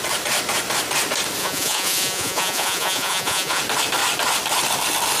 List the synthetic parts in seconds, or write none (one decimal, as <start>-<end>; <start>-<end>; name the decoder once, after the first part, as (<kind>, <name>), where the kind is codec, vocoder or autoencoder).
1.4-3.6 (vocoder, Vocos)